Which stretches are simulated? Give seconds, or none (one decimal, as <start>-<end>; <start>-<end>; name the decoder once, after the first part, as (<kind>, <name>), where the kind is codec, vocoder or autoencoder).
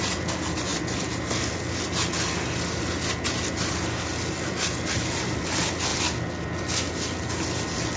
none